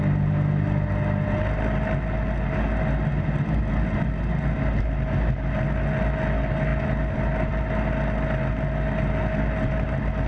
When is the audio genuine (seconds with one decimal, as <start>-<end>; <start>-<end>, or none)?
0.0-10.3